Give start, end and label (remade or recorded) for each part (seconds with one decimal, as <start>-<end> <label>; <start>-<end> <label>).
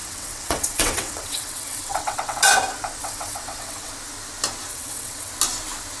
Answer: 0.0-2.4 remade; 2.4-3.0 recorded; 3.0-3.9 remade; 3.9-4.7 recorded; 4.7-5.3 remade; 5.3-6.0 recorded